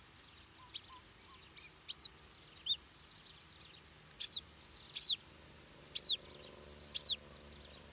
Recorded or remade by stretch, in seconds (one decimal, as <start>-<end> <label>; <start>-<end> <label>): 0.0-7.9 recorded